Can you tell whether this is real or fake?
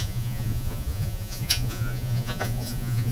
fake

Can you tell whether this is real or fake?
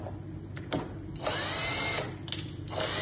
real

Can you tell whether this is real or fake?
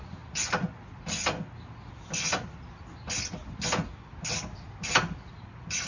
real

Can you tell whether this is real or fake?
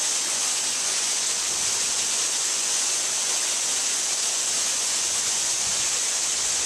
fake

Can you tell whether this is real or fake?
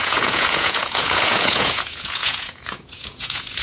fake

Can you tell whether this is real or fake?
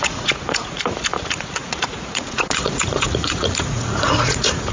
fake